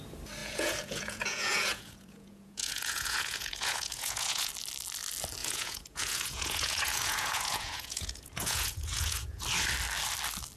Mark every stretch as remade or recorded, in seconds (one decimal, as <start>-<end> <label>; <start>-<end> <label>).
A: 0.0-0.4 recorded; 0.4-4.5 remade; 4.5-5.4 recorded; 5.4-9.4 remade; 9.4-10.6 recorded